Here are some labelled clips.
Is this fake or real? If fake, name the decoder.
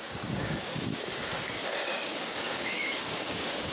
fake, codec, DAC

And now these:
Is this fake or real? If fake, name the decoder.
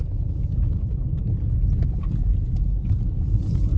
real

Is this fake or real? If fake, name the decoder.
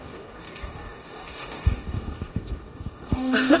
fake, codec, DAC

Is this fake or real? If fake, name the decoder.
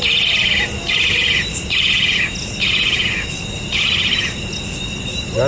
real